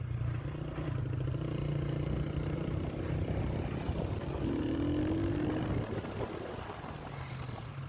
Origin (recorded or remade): recorded